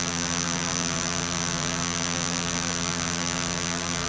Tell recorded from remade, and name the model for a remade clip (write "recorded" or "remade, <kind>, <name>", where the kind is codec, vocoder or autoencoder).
remade, vocoder, BigVGAN v2